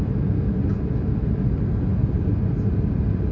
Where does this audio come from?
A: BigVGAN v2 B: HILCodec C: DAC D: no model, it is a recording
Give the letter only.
D